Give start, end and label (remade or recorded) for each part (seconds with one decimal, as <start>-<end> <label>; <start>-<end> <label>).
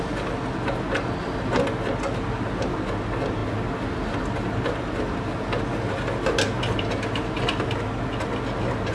0.0-8.9 recorded